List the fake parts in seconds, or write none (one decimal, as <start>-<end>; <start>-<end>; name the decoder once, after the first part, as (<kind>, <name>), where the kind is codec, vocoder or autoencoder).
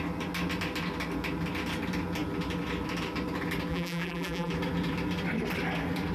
3.7-4.5 (vocoder, BigVGAN v2)